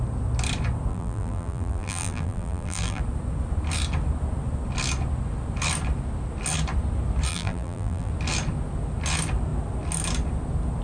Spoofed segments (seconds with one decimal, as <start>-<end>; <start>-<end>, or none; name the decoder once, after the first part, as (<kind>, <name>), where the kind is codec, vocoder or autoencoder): 0.9-3.0 (vocoder, BigVGAN v2); 7.3-8.1